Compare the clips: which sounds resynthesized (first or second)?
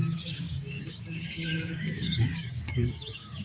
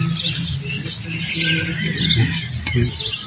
first